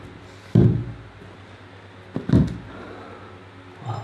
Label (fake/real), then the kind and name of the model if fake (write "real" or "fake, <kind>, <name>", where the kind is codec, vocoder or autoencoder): real